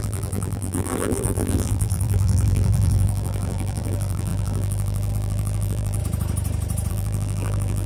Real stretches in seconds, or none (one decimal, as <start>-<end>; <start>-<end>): 6.0-6.9